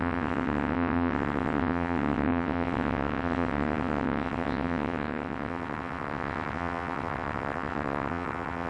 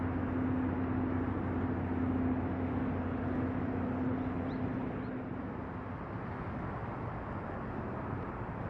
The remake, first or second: first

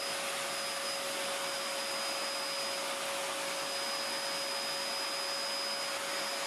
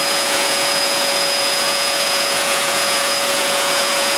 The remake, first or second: second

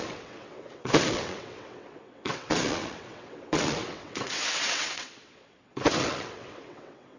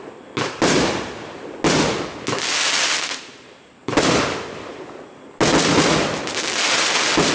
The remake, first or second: first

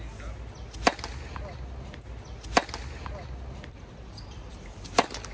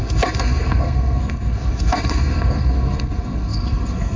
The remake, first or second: second